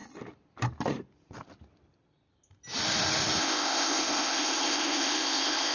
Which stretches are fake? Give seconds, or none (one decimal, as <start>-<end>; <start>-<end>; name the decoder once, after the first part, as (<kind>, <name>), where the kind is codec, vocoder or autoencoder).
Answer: 3.4-5.7 (codec, ZipCodec)